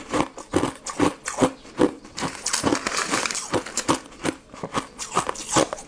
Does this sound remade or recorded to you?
recorded